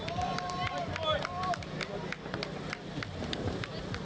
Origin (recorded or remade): recorded